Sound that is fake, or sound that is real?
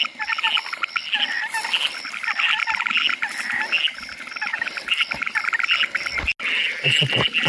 real